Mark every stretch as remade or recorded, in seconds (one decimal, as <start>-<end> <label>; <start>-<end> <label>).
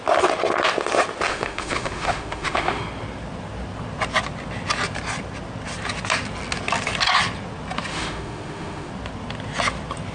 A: 0.0-1.3 recorded; 1.3-2.8 remade; 2.8-7.9 recorded; 7.9-8.9 remade; 8.9-10.1 recorded